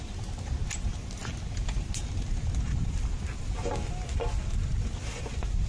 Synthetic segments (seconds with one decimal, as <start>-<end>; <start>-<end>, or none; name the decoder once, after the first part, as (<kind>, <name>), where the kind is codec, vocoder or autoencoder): none